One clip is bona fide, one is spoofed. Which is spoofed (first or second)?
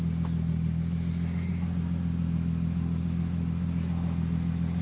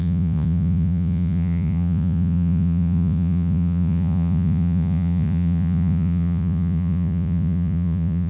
second